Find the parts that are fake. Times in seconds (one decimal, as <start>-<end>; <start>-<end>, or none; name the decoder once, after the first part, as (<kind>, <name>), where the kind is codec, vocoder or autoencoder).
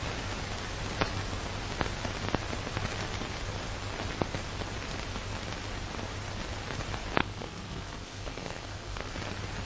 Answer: 7.2-9.1 (codec, SNAC)